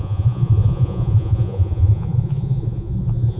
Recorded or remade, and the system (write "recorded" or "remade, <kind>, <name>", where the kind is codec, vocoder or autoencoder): remade, vocoder, Vocos